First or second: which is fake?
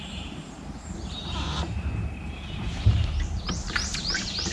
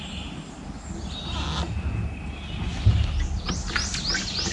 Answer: first